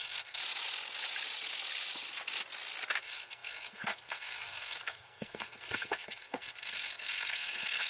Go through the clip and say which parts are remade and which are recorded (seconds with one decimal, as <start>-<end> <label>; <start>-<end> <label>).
0.0-0.4 remade; 0.4-3.0 recorded; 3.0-7.9 remade